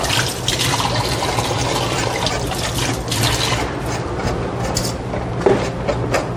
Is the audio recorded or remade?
recorded